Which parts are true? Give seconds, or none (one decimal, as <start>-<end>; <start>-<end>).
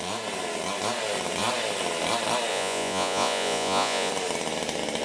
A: 0.0-2.5; 4.1-5.0